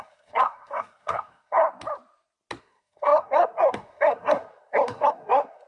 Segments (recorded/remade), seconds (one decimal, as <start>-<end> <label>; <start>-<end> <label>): 0.0-1.6 remade; 1.6-2.6 recorded; 2.6-5.7 remade